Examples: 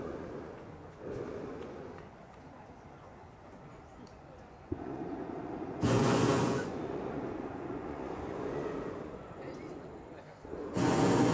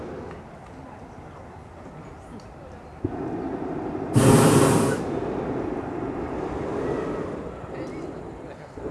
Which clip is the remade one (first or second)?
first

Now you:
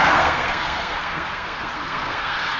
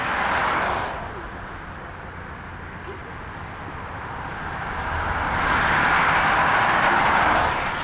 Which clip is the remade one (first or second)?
first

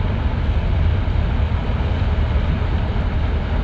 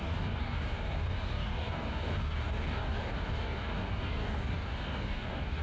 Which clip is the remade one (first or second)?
second